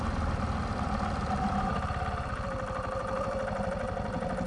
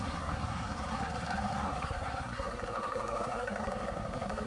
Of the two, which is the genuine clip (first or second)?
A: first